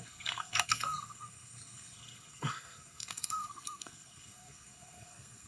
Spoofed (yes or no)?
yes